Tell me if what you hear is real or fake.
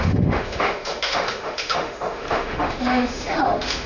fake